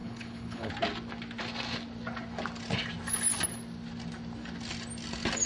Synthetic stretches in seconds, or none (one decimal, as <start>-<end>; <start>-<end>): 0.0-0.7